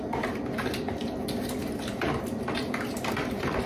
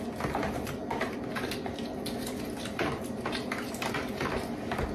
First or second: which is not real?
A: first